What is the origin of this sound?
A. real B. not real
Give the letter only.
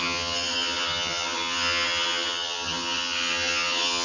B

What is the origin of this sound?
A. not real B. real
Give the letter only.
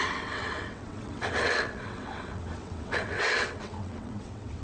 A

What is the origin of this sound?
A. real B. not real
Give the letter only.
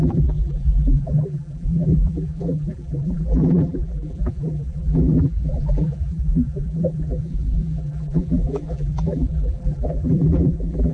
B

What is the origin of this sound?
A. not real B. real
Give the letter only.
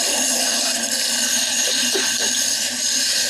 B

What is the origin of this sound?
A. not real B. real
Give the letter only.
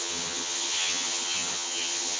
A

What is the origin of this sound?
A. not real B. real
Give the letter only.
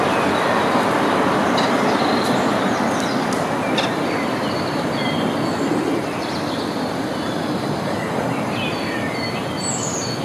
B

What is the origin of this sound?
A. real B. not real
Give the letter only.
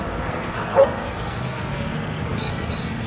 B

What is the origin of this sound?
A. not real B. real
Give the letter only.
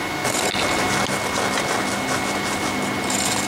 B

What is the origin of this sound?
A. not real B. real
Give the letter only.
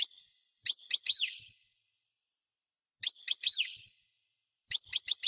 B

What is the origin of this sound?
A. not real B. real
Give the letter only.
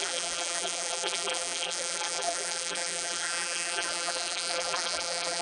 A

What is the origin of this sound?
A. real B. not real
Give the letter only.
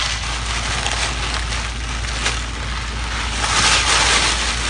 A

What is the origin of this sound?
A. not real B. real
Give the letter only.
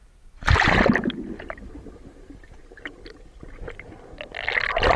B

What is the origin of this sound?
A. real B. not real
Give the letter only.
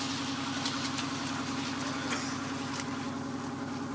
A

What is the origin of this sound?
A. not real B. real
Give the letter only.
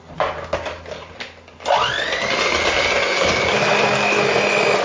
B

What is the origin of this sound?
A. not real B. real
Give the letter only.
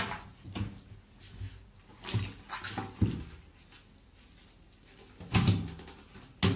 B